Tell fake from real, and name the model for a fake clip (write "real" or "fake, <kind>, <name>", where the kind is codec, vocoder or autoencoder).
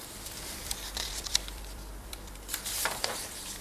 fake, vocoder, BigVGAN v2